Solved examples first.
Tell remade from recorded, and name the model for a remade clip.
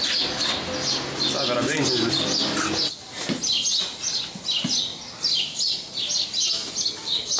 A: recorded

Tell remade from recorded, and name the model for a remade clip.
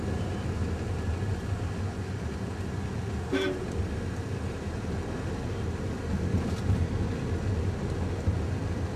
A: recorded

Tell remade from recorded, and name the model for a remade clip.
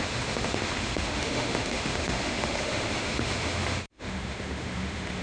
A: remade, autoencoder, DAC-VAE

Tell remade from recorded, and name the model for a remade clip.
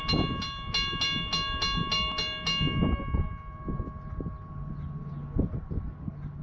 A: recorded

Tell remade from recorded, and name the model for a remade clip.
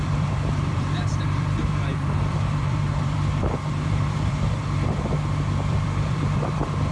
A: remade, vocoder, BigVGAN v2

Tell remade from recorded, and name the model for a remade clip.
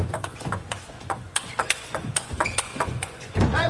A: remade, vocoder, Vocos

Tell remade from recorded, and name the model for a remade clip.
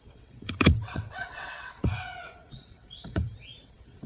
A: remade, vocoder, WaveNeXt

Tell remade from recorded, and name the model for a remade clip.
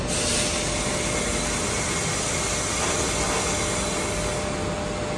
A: recorded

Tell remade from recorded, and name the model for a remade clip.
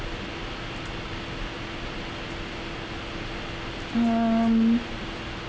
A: recorded